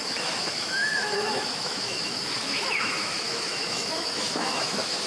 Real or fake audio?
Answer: fake